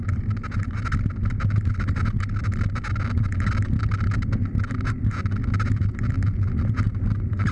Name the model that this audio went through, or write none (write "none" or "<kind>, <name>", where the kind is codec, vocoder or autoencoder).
none